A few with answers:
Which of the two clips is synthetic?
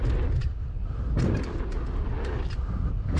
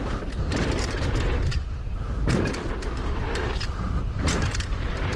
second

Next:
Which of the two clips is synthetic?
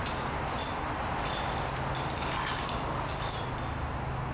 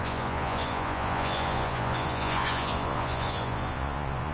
second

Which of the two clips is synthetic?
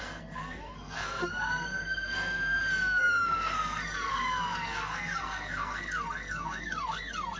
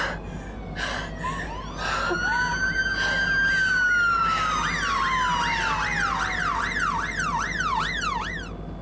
first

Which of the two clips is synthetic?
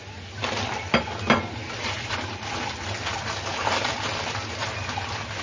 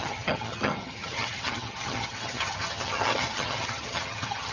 second